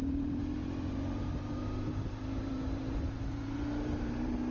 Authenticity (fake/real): fake